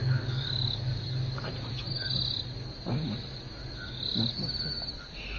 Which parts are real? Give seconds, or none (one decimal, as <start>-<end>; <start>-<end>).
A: 1.4-5.4